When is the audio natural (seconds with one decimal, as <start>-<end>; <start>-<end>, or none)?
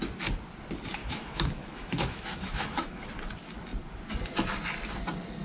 0.0-1.0; 3.1-5.4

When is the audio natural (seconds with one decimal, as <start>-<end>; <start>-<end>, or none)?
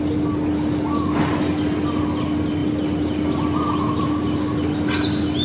0.0-5.4